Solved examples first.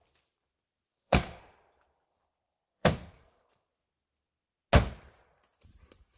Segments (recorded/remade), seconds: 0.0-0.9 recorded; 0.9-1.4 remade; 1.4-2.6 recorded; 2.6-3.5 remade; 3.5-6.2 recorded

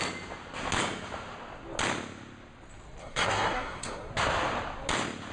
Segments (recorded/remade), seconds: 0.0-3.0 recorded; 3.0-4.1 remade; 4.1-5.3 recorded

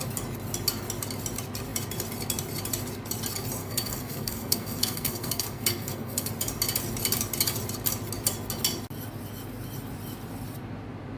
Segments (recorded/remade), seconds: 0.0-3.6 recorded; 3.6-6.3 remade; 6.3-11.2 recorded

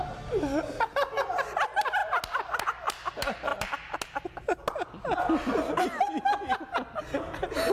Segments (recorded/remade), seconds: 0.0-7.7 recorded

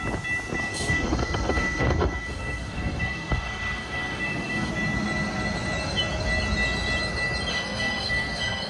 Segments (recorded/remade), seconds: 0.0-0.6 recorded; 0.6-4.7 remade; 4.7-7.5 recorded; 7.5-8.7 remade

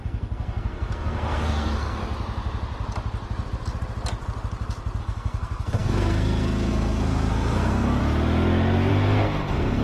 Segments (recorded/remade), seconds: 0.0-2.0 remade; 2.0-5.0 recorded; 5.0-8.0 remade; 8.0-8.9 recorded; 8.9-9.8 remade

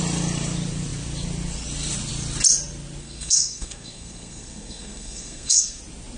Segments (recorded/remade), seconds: 0.0-3.0 recorded; 3.0-5.8 remade; 5.8-6.2 recorded